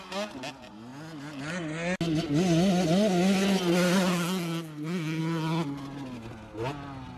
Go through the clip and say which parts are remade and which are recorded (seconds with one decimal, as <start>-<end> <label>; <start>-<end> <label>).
0.0-7.2 recorded